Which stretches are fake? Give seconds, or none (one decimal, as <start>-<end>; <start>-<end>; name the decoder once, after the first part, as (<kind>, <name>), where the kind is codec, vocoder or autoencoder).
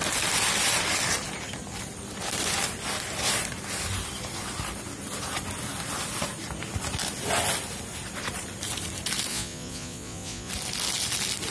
9.3-10.5 (vocoder, Vocos)